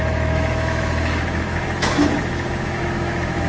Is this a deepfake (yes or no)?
yes